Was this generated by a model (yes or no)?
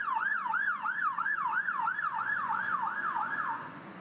yes